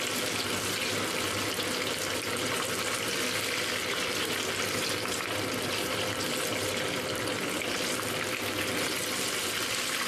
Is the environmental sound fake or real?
real